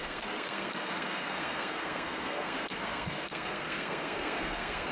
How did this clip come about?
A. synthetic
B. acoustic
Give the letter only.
A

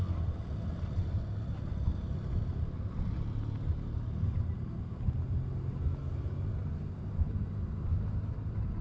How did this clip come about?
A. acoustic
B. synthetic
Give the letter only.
A